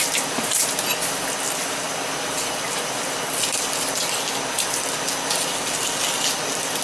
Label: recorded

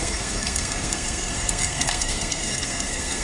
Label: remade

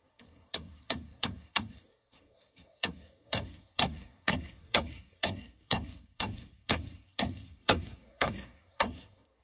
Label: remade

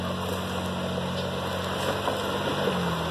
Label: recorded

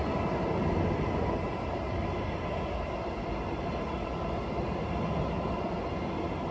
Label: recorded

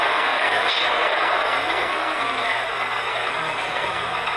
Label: remade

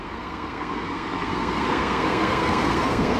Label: remade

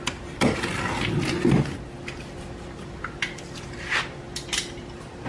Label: recorded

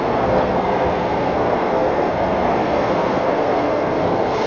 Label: remade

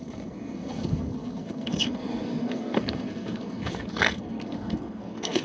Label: remade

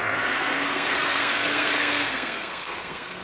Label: remade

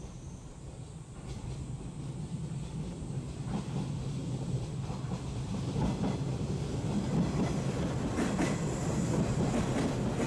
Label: recorded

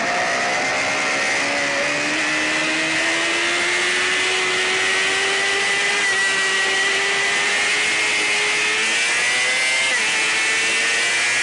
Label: recorded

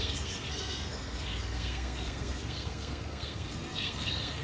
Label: remade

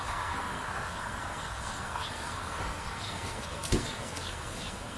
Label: remade